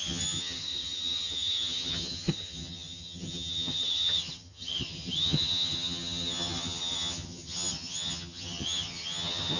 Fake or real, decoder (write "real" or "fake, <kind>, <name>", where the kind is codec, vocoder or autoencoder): fake, vocoder, HiFi-GAN